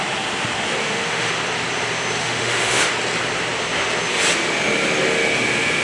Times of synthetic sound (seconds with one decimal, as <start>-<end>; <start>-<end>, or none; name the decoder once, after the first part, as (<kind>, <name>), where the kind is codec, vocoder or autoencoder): 0.8-1.3 (autoencoder, DAC-VAE); 2.2-2.9